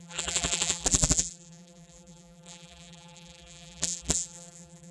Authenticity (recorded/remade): remade